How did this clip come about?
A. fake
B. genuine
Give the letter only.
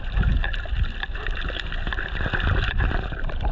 B